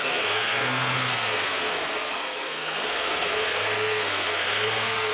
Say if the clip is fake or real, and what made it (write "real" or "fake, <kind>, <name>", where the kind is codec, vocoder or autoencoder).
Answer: fake, codec, SNAC